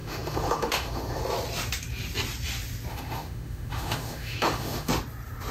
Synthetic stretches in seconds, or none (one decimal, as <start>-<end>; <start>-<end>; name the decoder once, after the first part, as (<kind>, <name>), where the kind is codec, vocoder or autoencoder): 0.0-1.2 (autoencoder, DAC-VAE); 2.9-4.9